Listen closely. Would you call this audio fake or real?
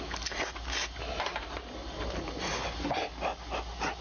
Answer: real